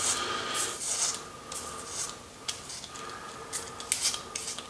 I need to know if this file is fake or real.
real